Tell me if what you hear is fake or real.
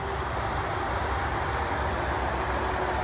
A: real